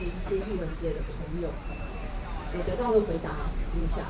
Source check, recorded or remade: remade